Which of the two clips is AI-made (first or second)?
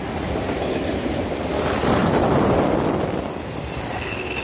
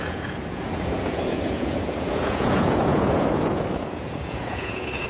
second